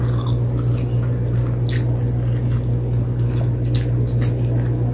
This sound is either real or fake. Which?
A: real